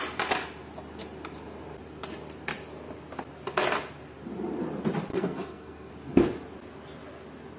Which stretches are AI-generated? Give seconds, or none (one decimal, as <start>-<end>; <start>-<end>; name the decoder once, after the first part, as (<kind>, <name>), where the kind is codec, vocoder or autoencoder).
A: 5.1-5.9 (codec, SNAC)